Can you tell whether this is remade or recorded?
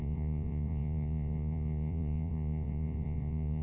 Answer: remade